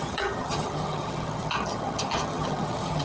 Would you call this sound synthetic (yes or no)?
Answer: yes